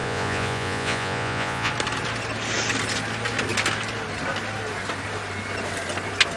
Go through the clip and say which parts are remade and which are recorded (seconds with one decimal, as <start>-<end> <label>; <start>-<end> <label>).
0.0-1.7 remade; 1.7-6.4 recorded